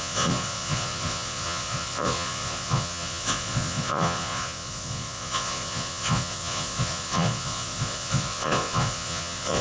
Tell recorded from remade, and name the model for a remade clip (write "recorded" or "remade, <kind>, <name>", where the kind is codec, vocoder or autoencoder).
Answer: remade, vocoder, Vocos